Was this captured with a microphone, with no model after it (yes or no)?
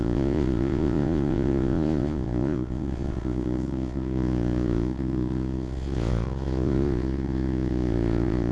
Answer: no